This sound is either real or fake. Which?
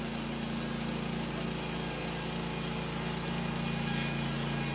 real